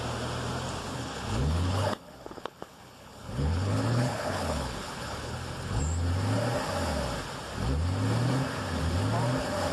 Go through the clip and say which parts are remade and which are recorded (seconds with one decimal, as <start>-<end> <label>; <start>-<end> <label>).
0.0-0.8 recorded; 0.8-5.8 remade; 5.8-9.7 recorded

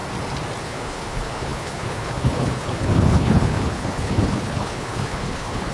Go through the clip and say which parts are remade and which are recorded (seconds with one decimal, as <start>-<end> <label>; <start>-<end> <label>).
0.0-0.6 recorded; 0.6-5.7 remade

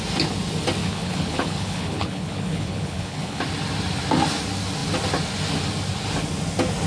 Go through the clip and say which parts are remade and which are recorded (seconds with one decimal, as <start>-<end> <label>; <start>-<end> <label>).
0.0-0.8 recorded; 0.8-3.4 remade; 3.4-6.9 recorded

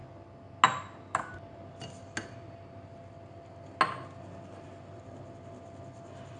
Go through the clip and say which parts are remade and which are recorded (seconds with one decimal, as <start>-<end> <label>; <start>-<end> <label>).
0.0-6.4 recorded

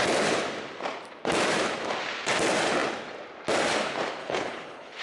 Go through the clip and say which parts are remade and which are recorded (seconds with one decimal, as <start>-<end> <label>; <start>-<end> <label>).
0.0-4.2 recorded; 4.2-5.0 remade

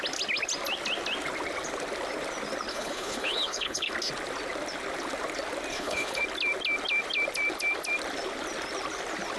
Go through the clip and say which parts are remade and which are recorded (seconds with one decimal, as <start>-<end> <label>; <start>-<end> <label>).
0.0-2.7 recorded; 2.7-3.9 remade; 3.9-5.7 recorded; 5.7-6.2 remade; 6.2-9.4 recorded

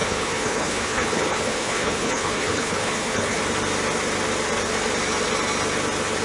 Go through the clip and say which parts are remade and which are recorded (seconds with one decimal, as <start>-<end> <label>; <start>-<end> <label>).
0.0-3.4 remade; 3.4-6.2 recorded